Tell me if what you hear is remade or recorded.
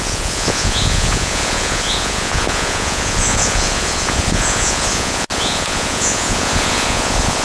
remade